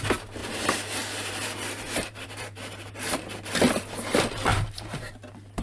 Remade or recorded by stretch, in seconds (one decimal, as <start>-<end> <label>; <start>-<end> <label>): 0.0-0.4 recorded; 0.4-3.5 remade; 3.5-4.5 recorded; 4.5-5.6 remade